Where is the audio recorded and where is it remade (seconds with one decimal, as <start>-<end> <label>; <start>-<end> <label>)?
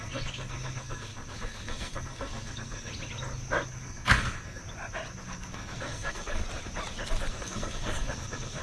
0.0-2.9 remade; 2.9-3.7 recorded; 3.7-4.6 remade; 4.6-5.2 recorded; 5.2-6.4 remade; 6.4-7.3 recorded; 7.3-8.6 remade